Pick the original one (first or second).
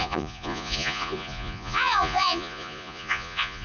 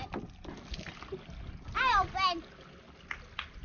second